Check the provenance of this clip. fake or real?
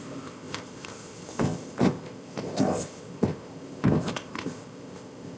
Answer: fake